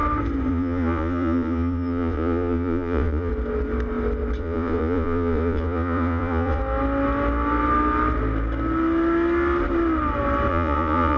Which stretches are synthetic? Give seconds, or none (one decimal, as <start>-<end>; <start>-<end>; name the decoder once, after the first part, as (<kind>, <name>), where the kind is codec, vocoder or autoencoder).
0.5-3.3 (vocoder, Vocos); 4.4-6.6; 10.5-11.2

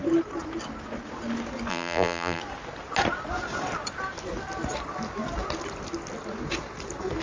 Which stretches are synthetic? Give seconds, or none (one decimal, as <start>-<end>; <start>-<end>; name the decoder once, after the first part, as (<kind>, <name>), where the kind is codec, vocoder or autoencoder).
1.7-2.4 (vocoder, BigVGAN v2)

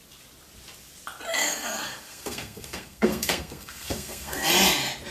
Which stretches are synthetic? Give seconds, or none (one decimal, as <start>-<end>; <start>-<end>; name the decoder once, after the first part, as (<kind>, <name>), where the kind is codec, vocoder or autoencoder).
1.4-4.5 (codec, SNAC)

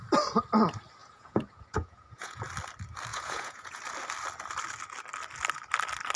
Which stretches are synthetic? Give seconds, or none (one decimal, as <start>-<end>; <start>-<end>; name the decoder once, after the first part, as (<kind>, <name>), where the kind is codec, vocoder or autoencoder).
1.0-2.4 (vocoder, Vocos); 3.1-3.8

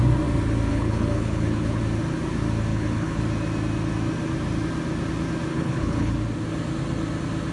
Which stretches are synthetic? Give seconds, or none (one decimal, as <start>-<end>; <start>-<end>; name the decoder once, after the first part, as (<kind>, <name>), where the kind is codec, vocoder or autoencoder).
0.7-1.8 (codec, HILCodec); 2.7-3.2; 5.5-6.1

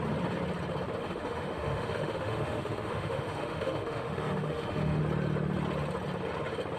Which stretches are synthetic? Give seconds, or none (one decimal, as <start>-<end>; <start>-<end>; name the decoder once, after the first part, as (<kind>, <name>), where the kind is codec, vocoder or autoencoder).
1.0-5.0 (autoencoder, DAC-VAE)